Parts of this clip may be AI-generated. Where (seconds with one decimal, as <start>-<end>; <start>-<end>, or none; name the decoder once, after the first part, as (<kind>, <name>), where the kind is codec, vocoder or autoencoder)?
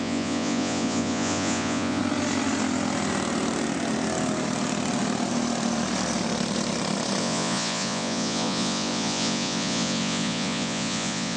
0.0-2.0 (vocoder, Vocos); 7.2-11.4